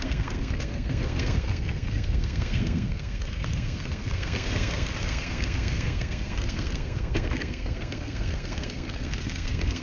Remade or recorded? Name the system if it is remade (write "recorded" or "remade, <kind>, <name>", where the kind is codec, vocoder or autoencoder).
remade, codec, SNAC